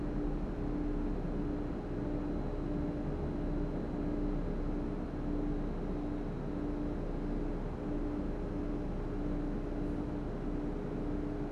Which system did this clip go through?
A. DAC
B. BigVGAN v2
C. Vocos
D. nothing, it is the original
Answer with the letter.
D